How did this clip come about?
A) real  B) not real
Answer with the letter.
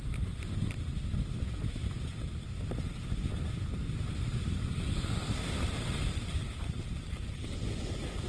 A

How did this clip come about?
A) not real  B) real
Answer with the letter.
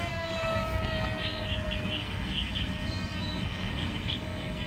A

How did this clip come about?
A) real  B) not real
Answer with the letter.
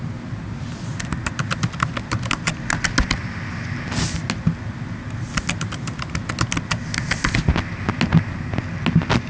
A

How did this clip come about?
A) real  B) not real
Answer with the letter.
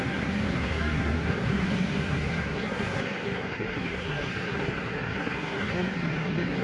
B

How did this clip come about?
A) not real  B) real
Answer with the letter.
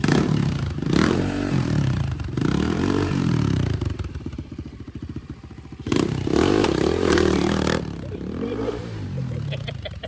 A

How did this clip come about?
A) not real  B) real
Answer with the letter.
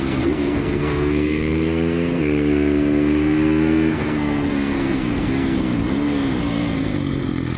A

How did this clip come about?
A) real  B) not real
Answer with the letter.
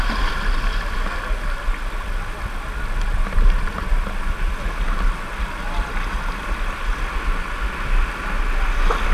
A